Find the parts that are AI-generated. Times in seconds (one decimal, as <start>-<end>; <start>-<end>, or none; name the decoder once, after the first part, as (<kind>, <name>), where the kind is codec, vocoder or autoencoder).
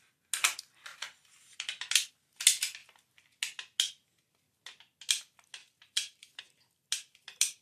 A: 5.6-6.4 (vocoder, BigVGAN v2)